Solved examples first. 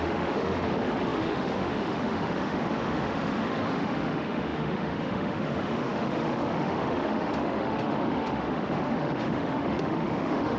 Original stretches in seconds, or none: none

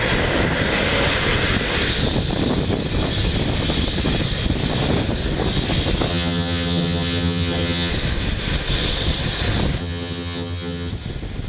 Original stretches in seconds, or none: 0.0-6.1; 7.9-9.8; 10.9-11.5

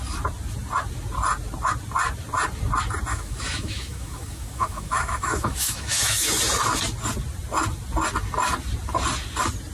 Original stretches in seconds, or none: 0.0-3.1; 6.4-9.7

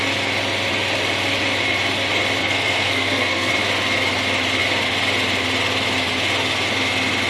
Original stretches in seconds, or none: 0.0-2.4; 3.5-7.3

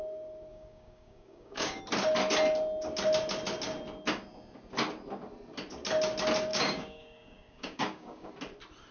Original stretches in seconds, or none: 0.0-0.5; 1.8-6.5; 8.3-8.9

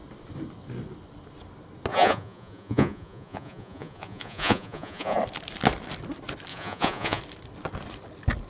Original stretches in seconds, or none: 0.0-1.9; 5.2-6.5; 7.2-8.5